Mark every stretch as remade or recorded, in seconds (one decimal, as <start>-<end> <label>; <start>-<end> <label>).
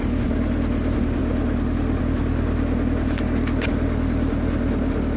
0.0-5.2 recorded